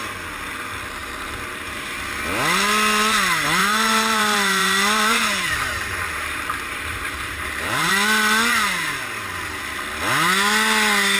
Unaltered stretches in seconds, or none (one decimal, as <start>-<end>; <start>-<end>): 0.0-1.0; 1.9-3.6; 7.9-11.2